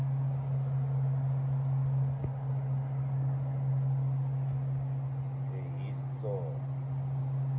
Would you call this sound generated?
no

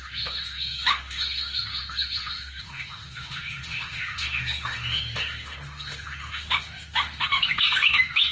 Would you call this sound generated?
yes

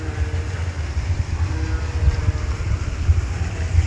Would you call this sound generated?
no